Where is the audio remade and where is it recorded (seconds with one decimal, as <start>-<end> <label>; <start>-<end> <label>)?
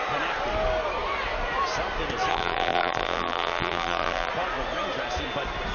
0.0-2.3 recorded; 2.3-4.3 remade; 4.3-5.7 recorded